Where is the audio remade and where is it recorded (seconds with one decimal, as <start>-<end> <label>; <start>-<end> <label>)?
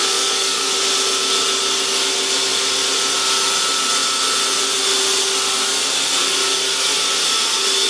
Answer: 0.0-0.7 remade; 0.7-7.9 recorded